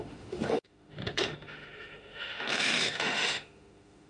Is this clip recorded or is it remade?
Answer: remade